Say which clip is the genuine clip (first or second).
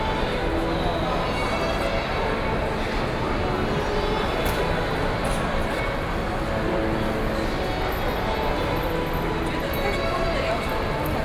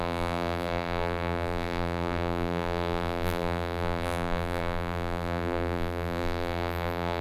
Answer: first